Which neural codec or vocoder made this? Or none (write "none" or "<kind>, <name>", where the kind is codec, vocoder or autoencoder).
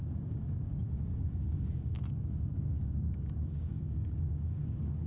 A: codec, DAC